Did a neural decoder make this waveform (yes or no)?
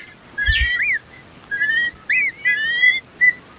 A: no